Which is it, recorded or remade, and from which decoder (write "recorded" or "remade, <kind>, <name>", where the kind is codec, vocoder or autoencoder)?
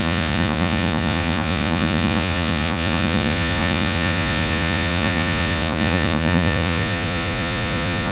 remade, vocoder, Vocos